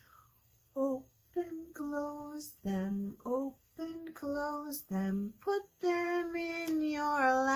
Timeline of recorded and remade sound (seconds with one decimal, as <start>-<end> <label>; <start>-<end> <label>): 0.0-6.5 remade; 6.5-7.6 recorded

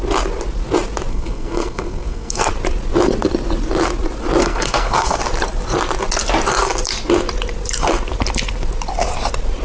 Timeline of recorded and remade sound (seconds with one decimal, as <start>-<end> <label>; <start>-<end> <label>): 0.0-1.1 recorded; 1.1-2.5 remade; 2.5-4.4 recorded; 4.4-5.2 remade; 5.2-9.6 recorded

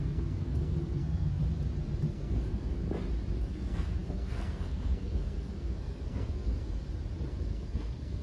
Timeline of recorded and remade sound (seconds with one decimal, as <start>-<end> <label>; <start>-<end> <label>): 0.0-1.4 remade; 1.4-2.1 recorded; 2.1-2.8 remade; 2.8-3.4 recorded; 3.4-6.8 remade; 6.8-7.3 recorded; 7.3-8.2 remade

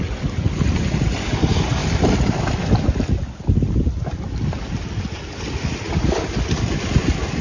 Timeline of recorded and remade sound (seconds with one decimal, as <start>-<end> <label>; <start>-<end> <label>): 0.0-7.4 recorded